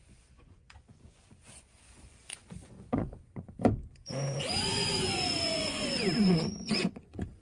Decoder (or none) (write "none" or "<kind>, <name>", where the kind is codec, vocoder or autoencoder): vocoder, Vocos